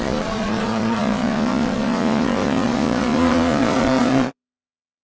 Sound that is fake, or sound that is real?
fake